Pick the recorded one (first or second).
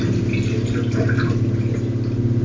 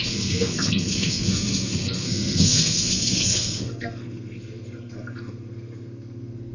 first